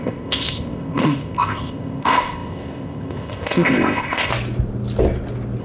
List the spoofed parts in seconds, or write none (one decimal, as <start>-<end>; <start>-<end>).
0.0-4.3